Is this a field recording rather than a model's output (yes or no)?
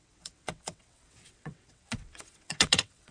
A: no